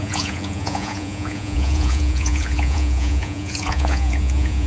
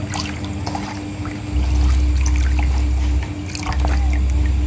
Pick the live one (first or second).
second